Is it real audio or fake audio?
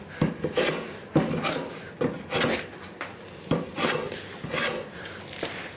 real